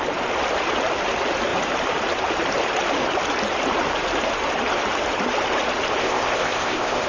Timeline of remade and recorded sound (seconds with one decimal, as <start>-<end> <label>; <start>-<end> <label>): 0.0-6.0 recorded; 6.0-7.1 remade